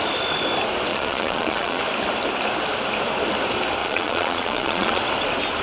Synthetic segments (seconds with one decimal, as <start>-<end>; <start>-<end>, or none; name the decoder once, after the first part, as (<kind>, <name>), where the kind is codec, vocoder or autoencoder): 0.9-1.8 (vocoder, Vocos); 3.8-5.0